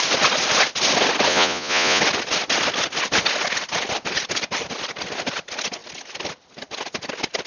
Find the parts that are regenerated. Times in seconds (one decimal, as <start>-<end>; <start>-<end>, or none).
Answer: 1.3-2.0